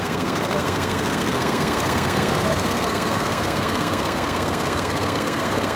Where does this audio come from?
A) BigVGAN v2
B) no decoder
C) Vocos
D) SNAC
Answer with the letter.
D